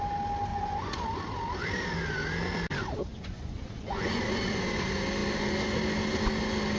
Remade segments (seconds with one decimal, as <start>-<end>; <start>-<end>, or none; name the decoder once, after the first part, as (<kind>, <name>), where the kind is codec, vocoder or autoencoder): 0.5-1.0 (vocoder, Vocos); 3.1-4.2